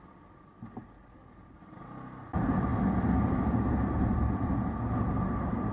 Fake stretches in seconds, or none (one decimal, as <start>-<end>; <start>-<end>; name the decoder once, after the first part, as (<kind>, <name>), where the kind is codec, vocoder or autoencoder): none